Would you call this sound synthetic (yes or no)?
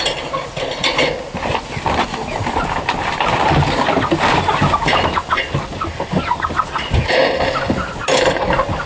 no